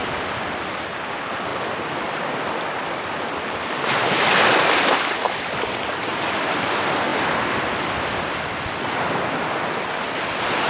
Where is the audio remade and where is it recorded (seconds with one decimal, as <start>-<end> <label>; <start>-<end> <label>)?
0.0-1.5 recorded; 1.5-3.1 remade; 3.1-10.7 recorded